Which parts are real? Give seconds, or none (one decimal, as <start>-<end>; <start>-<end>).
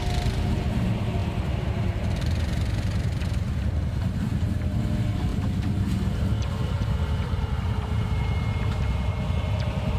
0.0-1.2; 4.8-5.3; 9.3-10.0